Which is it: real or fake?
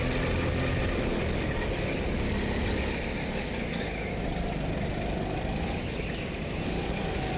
real